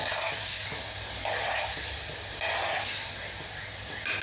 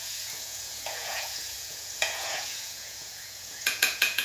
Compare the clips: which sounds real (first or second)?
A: first